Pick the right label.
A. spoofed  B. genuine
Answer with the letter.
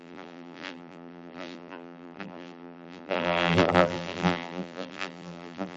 A